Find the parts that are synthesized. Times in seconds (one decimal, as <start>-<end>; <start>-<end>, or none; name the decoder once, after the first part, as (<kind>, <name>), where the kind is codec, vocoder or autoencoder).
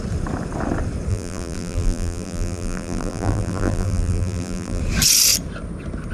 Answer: 1.1-4.8 (vocoder, BigVGAN v2)